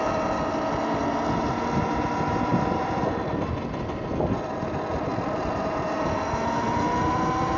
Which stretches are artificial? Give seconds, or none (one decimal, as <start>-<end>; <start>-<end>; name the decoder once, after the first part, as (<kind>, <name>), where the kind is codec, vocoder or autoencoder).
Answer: 2.5-3.5 (vocoder, BigVGAN v2); 5.1-6.7